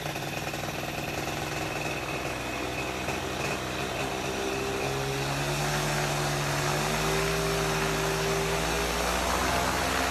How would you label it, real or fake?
real